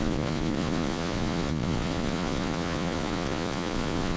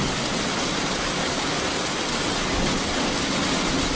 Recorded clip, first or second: second